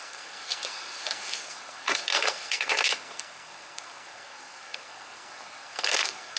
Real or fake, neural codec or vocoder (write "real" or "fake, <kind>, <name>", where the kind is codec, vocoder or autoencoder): fake, codec, SNAC